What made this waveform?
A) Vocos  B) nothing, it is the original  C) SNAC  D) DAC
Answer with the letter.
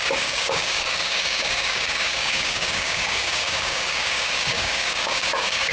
D